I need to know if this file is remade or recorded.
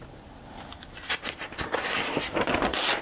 recorded